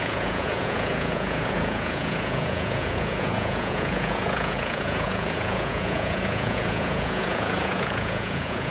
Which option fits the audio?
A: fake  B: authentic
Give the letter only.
A